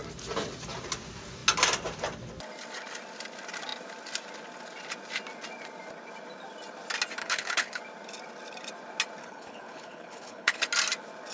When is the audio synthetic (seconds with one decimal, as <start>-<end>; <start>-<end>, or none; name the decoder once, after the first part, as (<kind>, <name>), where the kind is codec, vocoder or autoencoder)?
7.2-7.8 (codec, HILCodec); 9.2-10.7